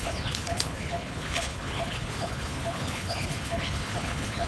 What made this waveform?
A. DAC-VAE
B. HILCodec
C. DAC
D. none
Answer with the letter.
B